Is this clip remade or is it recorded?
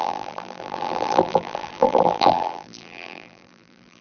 remade